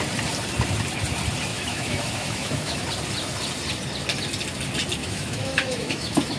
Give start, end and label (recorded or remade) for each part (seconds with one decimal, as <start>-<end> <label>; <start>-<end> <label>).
0.0-1.5 recorded; 1.5-2.8 remade; 2.8-5.0 recorded; 5.0-6.4 remade